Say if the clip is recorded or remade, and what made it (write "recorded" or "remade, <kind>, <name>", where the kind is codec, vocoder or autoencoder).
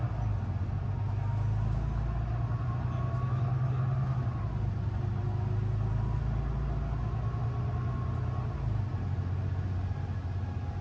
recorded